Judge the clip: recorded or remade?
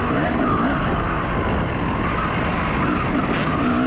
recorded